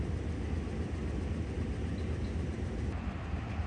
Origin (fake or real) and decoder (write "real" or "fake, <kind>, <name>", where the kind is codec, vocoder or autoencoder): real